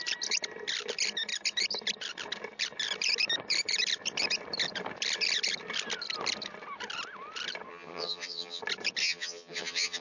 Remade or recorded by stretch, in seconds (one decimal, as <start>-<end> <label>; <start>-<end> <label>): 0.0-7.7 recorded; 7.7-8.6 remade; 8.6-9.0 recorded; 9.0-10.0 remade